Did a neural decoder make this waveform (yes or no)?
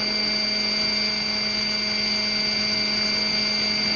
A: no